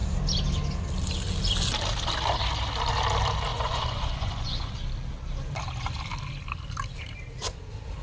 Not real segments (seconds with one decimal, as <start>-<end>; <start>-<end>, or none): 3.5-4.7